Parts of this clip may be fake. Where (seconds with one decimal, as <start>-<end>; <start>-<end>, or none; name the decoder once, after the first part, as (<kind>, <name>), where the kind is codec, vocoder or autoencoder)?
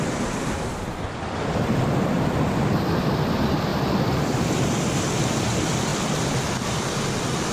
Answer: none